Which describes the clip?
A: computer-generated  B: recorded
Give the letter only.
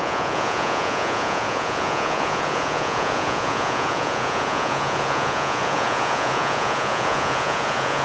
A